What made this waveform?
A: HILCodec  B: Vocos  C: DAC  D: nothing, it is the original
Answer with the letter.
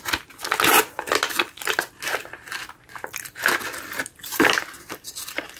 D